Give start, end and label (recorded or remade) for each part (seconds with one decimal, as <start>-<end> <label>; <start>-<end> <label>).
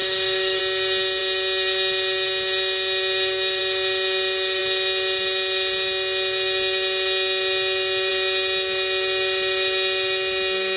0.0-0.6 remade; 0.6-10.8 recorded